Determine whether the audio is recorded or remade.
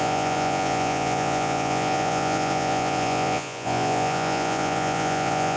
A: remade